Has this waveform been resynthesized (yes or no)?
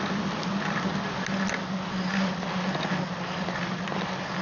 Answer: no